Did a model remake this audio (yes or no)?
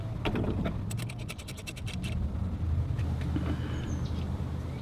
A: no